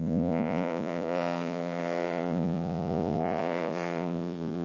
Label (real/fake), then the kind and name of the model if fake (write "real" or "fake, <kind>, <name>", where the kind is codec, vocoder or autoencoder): fake, vocoder, Vocos